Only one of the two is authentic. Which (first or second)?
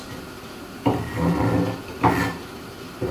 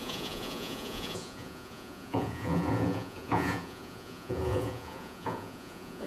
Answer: first